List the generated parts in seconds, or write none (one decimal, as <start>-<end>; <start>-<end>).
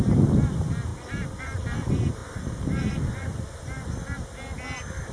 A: 0.9-1.4; 2.2-3.9